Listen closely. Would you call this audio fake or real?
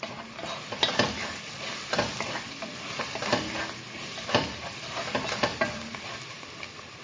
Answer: real